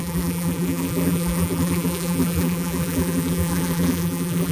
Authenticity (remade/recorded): remade